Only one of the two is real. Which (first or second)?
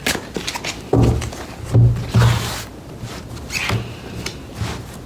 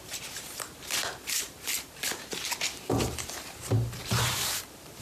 first